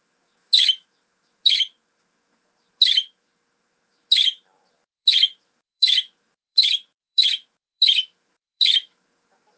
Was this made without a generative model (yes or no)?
no